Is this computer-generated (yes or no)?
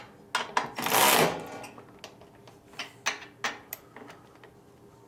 no